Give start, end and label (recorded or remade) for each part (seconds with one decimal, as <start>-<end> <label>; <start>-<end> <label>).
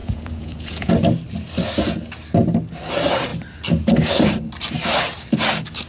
0.0-0.9 remade; 0.9-5.9 recorded